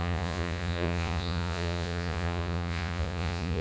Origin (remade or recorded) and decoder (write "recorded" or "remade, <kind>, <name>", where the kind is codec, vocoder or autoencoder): remade, vocoder, Vocos